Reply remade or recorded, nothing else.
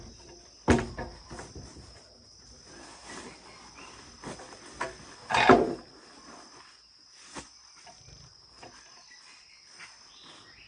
recorded